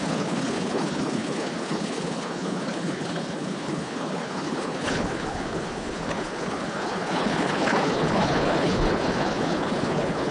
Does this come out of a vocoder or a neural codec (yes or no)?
yes